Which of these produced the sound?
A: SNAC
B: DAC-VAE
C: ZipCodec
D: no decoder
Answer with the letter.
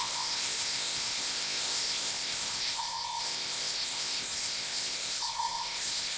C